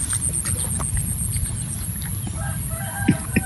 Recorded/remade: recorded